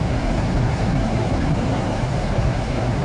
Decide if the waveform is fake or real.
fake